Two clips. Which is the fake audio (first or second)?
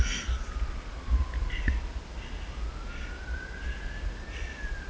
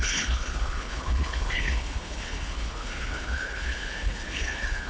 second